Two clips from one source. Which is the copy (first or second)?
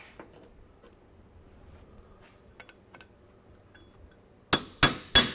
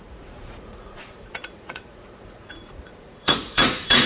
second